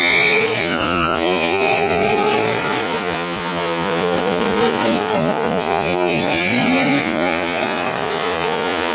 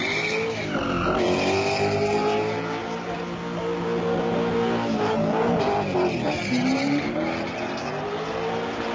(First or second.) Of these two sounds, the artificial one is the first